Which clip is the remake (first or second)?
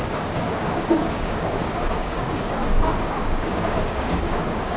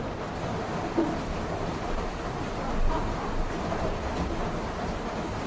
first